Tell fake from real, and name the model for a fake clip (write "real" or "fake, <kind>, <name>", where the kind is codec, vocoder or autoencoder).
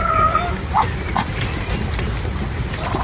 real